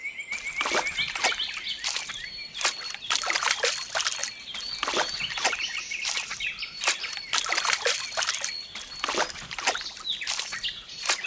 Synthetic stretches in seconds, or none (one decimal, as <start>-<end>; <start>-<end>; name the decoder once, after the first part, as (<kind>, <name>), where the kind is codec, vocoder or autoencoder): none